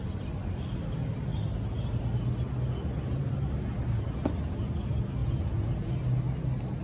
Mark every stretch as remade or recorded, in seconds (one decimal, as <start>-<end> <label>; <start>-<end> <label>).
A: 0.0-5.2 recorded; 5.2-5.9 remade; 5.9-6.8 recorded